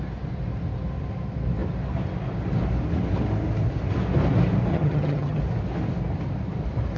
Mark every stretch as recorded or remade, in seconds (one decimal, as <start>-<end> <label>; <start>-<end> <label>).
0.0-4.7 recorded; 4.7-5.4 remade; 5.4-7.0 recorded